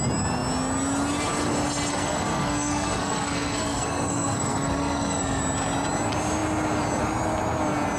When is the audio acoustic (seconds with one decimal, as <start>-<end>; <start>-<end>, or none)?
0.0-1.9; 5.4-8.0